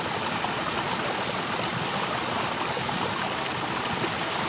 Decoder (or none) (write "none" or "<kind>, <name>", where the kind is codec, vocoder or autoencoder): none